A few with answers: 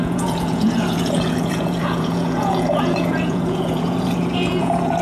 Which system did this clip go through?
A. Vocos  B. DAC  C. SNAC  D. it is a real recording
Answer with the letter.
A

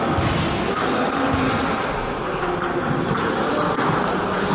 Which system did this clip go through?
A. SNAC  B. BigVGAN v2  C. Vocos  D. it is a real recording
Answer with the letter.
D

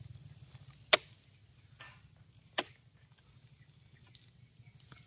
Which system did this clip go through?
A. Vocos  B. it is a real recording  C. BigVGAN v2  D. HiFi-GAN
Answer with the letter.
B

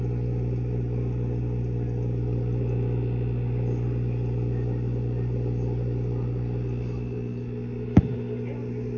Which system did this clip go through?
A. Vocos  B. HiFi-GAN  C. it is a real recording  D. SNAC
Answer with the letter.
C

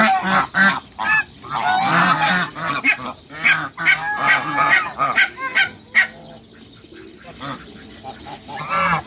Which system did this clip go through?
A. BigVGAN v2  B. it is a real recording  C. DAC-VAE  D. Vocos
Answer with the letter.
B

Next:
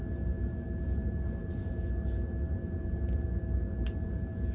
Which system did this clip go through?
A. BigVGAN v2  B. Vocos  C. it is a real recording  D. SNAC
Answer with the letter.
C